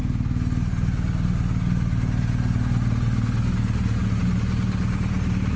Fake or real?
real